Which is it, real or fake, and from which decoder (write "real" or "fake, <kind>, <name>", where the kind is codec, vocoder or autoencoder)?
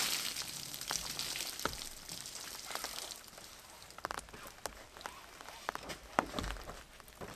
real